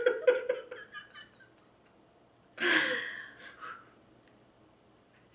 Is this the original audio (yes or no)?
yes